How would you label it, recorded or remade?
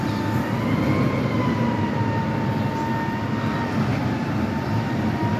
recorded